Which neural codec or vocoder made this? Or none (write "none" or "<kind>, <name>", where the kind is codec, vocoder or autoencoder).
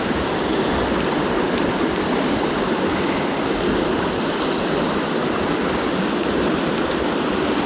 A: none